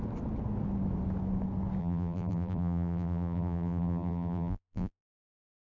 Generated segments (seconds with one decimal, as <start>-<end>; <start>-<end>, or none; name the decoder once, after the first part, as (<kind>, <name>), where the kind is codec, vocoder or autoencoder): 1.8-5.2 (vocoder, BigVGAN v2)